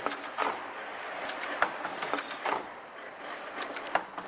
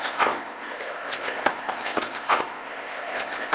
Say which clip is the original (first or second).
first